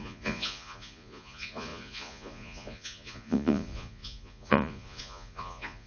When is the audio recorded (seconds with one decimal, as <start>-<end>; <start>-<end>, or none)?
none